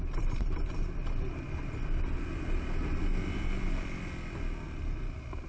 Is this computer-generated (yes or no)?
no